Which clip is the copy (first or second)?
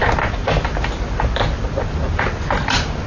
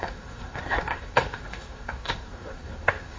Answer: second